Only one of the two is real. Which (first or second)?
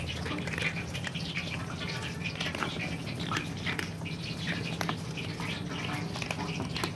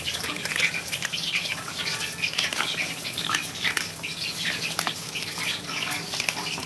first